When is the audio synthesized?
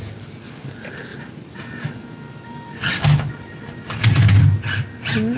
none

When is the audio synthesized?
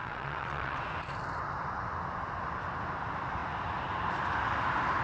0.0-0.8 (vocoder, WaveNeXt)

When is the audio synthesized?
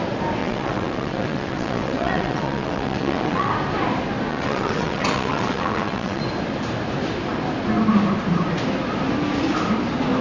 0.4-3.5 (vocoder, WaveNeXt); 4.3-6.2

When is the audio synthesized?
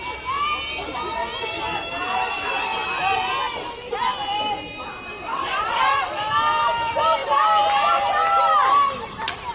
5.3-6.0 (vocoder, WaveNeXt)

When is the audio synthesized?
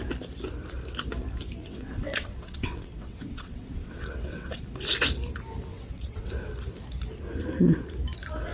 1.6-4.6 (vocoder, WaveNeXt); 5.7-6.3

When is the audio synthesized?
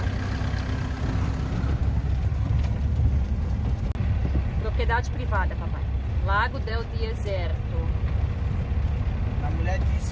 none